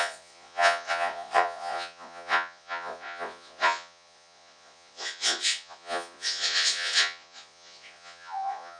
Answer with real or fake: fake